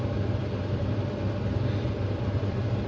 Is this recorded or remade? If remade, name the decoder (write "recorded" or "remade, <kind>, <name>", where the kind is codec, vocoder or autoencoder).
remade, vocoder, BigVGAN v2